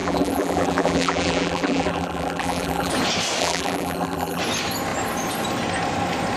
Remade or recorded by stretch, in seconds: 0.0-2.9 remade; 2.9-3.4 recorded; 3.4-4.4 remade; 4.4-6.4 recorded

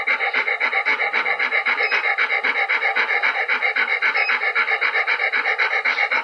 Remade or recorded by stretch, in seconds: 0.0-6.2 recorded

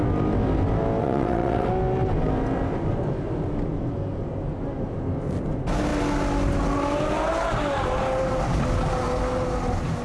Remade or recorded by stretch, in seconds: 0.0-1.0 recorded; 1.0-1.7 remade; 1.7-10.0 recorded

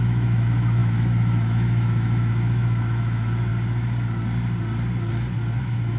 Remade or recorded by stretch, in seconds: 0.0-3.5 remade; 3.5-5.6 recorded; 5.6-6.0 remade

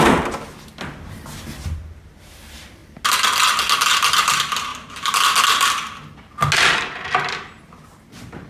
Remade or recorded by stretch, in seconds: 0.0-8.5 recorded

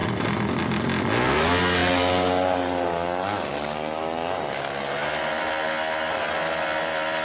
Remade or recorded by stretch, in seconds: 0.0-7.2 recorded

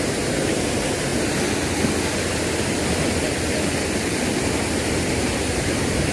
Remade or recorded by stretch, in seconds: 0.0-1.1 remade; 1.1-4.7 recorded; 4.7-6.1 remade

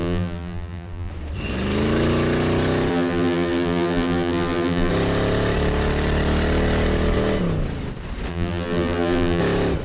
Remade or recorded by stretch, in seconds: 0.0-1.1 remade; 1.1-2.9 recorded; 2.9-4.9 remade; 4.9-8.3 recorded; 8.3-9.4 remade; 9.4-9.8 recorded